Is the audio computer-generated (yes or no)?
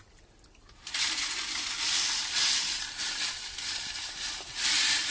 no